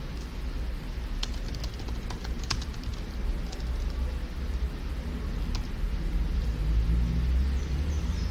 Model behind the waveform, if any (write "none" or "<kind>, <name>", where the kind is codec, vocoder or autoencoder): none